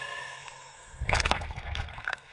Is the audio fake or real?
fake